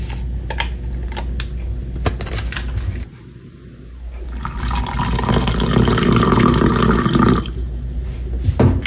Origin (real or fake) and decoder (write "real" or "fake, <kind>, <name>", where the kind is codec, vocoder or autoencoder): real